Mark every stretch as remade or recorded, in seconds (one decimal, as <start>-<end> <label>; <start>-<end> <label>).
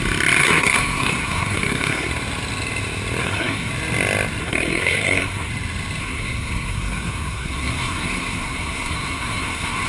0.0-0.4 recorded; 0.4-2.1 remade; 2.1-3.2 recorded; 3.2-3.7 remade; 3.7-4.4 recorded; 4.4-5.5 remade; 5.5-6.0 recorded; 6.0-9.9 remade